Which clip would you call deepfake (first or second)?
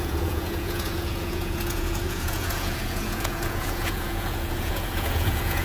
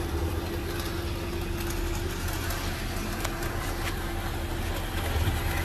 first